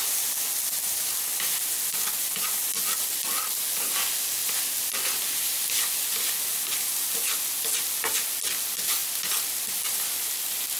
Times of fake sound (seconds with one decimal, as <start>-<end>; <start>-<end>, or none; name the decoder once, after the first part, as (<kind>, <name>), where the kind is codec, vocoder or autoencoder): 4.4-5.7 (vocoder, BigVGAN v2); 6.5-7.1; 9.0-10.4